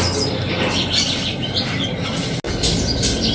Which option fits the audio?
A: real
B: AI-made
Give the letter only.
A